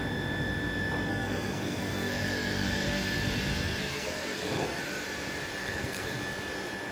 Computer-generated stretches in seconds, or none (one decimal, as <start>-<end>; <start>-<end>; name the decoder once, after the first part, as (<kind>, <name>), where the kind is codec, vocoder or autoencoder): 1.1-3.1 (codec, SNAC); 3.5-4.8; 5.6-6.2